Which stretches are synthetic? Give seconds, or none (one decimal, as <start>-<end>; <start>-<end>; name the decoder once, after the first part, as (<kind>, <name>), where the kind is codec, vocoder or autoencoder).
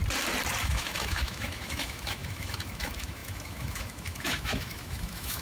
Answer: 0.6-5.4 (autoencoder, DAC-VAE)